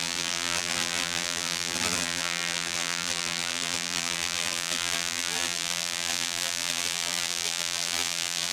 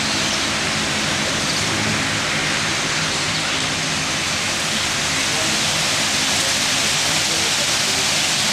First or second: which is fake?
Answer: first